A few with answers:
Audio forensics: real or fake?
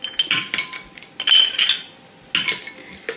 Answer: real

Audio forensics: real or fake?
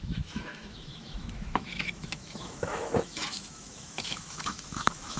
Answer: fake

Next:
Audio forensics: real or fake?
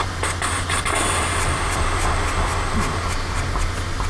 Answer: real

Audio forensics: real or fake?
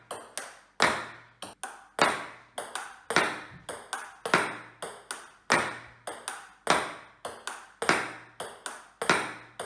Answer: real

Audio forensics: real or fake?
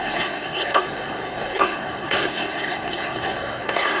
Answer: fake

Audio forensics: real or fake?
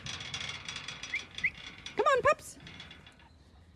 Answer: fake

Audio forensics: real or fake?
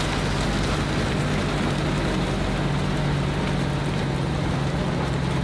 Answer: real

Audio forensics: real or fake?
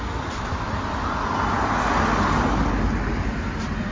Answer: real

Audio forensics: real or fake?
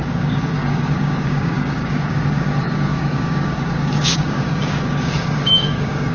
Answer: fake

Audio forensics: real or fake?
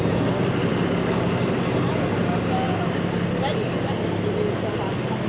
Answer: real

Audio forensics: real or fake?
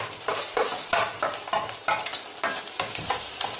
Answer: real